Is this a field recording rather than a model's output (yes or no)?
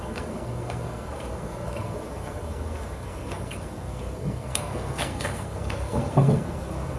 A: no